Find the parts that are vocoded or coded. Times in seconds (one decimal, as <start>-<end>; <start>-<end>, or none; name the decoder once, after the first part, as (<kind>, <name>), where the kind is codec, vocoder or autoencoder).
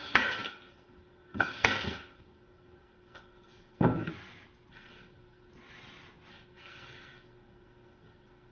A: 0.0-4.1 (codec, SNAC); 4.7-5.5; 6.3-8.5